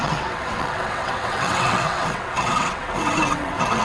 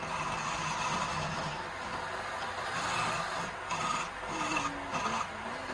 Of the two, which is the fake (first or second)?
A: first